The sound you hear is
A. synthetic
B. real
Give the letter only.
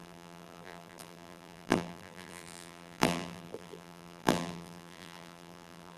A